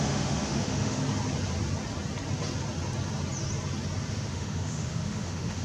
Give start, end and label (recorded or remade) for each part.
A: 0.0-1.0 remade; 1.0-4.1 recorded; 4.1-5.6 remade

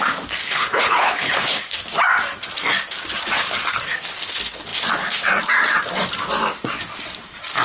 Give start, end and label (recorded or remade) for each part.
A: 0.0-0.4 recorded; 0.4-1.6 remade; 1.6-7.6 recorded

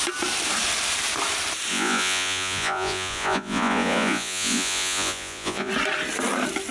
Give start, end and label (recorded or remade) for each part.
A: 0.0-1.7 recorded; 1.7-5.7 remade; 5.7-6.7 recorded

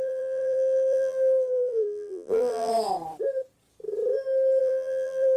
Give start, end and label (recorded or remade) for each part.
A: 0.0-2.7 remade; 2.7-4.6 recorded; 4.6-5.4 remade

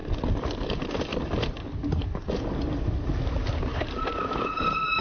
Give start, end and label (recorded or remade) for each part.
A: 0.0-5.0 recorded